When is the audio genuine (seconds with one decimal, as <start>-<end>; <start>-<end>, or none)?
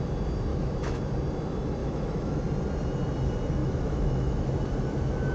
0.0-0.5; 1.0-1.8; 2.4-3.6; 4.5-5.3